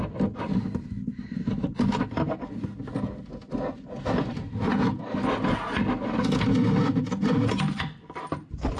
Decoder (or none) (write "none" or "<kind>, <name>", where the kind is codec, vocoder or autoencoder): none